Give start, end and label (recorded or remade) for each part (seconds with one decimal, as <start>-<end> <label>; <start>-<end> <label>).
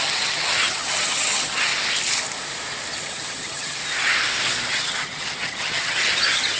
0.0-1.7 remade; 1.7-3.0 recorded; 3.0-3.8 remade; 3.8-4.7 recorded; 4.7-6.6 remade